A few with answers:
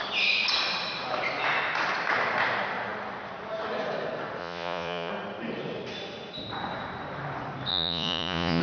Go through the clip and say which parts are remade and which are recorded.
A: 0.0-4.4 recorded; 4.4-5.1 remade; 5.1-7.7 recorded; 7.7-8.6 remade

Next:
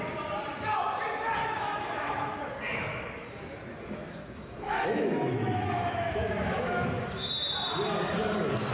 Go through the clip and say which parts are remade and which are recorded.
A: 0.0-1.4 recorded; 1.4-2.5 remade; 2.5-2.9 recorded; 2.9-7.3 remade; 7.3-8.7 recorded

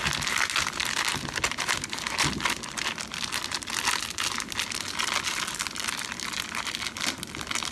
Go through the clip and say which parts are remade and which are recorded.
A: 0.0-7.7 recorded